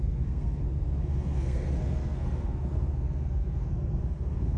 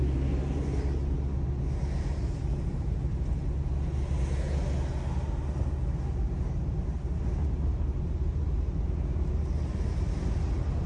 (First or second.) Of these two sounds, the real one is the second